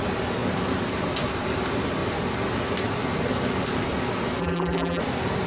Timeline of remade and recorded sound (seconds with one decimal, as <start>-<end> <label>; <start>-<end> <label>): 0.0-4.4 recorded; 4.4-5.0 remade; 5.0-5.5 recorded